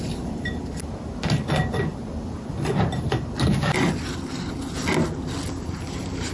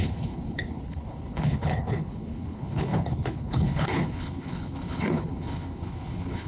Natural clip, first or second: first